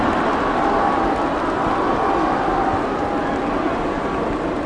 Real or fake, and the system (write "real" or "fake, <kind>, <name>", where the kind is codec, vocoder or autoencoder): real